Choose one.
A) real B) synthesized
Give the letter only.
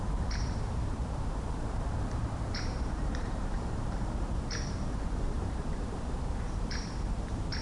B